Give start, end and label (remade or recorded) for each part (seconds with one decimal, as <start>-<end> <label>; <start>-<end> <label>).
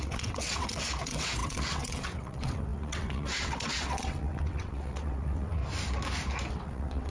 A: 0.0-5.6 remade; 5.6-6.5 recorded; 6.5-7.1 remade